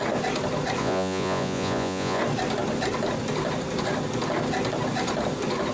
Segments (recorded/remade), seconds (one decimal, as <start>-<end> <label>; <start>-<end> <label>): 0.0-0.8 recorded; 0.8-2.2 remade; 2.2-5.7 recorded